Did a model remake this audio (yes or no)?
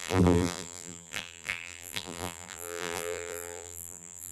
yes